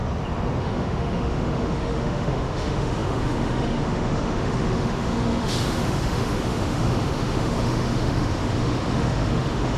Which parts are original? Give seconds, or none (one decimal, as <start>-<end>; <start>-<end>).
0.0-0.6

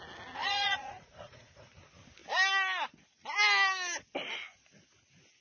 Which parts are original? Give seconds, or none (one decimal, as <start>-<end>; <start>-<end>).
0.0-0.4; 1.7-5.4

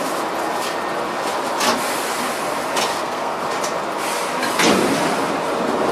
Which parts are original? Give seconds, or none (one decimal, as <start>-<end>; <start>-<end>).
0.0-2.9; 3.4-5.9

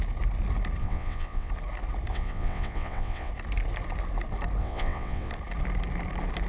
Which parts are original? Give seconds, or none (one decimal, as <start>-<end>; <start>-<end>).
0.0-0.8; 1.5-2.1; 3.3-4.6; 5.3-6.5

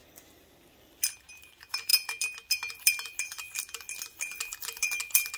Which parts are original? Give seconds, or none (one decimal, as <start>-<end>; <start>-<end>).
0.0-1.2; 1.9-5.4